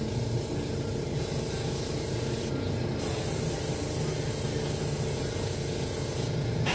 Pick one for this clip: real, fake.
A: real